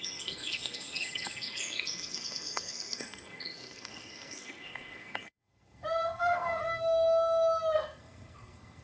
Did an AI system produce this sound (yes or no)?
yes